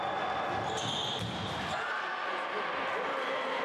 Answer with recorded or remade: recorded